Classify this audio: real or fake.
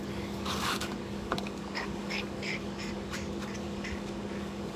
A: fake